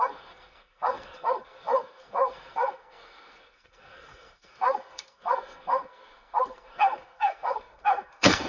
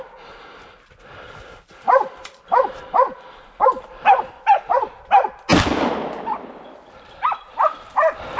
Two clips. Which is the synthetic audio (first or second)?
first